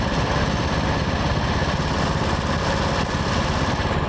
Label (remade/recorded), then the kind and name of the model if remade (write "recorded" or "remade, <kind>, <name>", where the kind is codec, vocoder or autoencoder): recorded